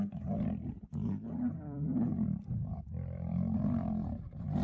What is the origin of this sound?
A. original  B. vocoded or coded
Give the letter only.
A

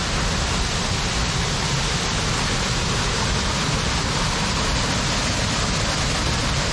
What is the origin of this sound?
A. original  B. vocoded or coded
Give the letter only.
A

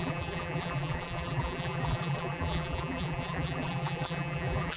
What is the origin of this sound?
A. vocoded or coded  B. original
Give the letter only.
A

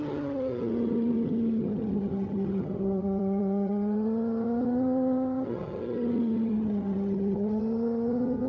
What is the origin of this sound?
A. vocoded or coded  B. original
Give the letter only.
A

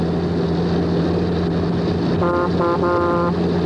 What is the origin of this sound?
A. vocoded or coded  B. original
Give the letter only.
B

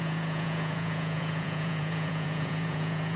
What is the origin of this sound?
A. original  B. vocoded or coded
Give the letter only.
B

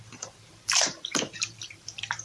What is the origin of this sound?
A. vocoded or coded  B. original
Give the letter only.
A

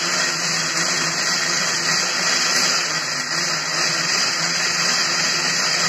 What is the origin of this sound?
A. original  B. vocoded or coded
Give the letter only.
A